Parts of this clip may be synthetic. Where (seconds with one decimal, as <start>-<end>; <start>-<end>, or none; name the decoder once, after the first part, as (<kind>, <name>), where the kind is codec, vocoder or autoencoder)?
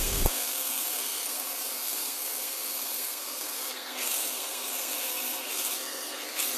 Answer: 0.0-6.6 (codec, SNAC)